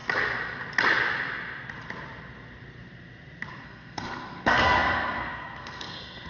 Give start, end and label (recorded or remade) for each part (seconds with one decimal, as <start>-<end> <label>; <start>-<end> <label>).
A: 0.0-3.5 recorded; 3.5-6.3 remade